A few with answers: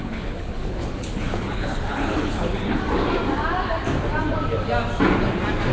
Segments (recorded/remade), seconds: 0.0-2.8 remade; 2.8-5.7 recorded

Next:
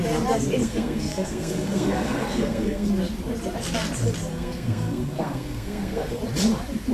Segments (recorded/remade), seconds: 0.0-0.6 recorded; 0.6-2.9 remade; 2.9-4.3 recorded; 4.3-6.2 remade; 6.2-6.9 recorded